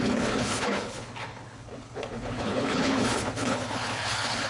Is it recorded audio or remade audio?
remade